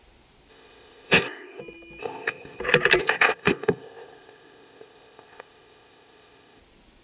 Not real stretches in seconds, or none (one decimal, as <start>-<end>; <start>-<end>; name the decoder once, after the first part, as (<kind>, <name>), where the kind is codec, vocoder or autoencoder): 0.5-1.6 (codec, ZipCodec); 2.0-2.6; 3.0-6.6